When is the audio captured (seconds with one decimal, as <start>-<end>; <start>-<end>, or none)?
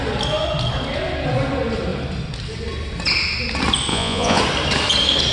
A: 0.0-3.9; 4.4-5.3